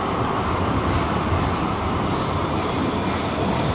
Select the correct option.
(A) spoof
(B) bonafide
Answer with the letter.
B